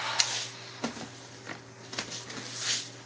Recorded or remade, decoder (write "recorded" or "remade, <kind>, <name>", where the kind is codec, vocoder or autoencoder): recorded